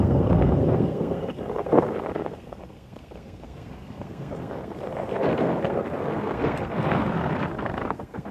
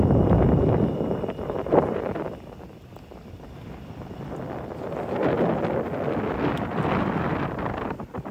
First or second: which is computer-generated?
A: first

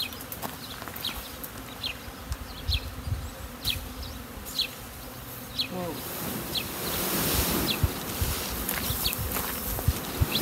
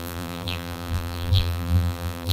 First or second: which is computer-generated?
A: second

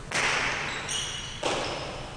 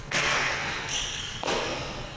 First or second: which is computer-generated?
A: second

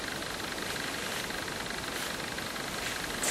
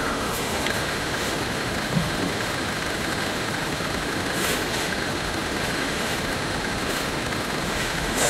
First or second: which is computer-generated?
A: second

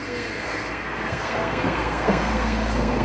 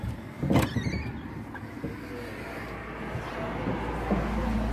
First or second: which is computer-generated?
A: first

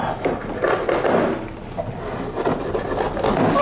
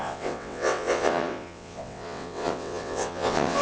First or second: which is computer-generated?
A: second